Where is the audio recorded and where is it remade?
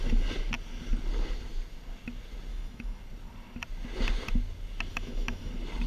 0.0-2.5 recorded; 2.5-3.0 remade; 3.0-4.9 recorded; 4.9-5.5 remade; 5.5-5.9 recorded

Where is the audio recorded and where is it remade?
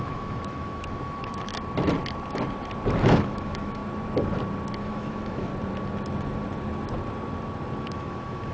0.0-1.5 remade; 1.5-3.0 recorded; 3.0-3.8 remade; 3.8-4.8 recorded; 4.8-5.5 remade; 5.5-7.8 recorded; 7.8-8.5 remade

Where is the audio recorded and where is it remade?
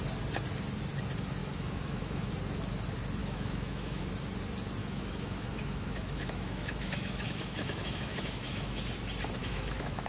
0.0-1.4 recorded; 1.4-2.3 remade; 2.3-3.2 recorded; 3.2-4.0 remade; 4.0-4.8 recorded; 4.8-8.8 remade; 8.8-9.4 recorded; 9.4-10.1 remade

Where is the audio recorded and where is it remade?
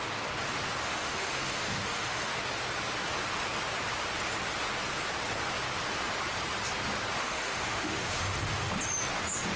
0.0-0.8 recorded; 0.8-2.3 remade; 2.3-7.2 recorded; 7.2-8.7 remade; 8.7-9.6 recorded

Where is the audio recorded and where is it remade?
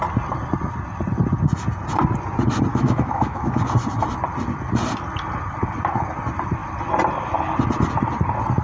0.0-2.7 recorded; 2.7-3.6 remade; 3.6-8.6 recorded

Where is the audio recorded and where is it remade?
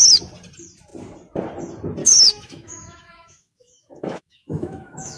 0.0-2.0 recorded; 2.0-5.2 remade